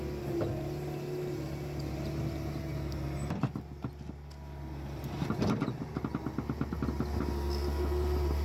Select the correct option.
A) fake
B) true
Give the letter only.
B